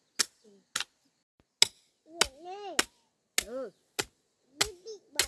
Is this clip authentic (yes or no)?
yes